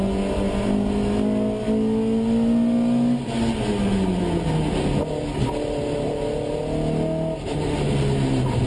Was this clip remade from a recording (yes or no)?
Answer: no